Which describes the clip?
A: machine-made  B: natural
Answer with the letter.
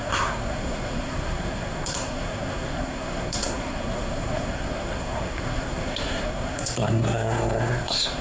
A